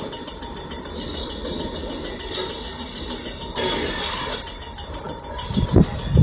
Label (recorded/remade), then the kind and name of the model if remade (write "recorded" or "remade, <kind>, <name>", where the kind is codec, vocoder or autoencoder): recorded